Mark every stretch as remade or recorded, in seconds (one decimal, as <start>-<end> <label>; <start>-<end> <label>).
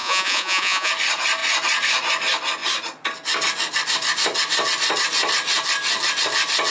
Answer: 0.0-0.9 remade; 0.9-6.7 recorded